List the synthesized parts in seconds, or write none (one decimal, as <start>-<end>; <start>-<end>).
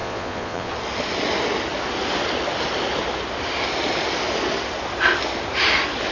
0.0-0.7